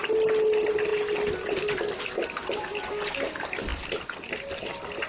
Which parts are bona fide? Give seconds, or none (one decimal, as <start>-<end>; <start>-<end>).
0.0-5.1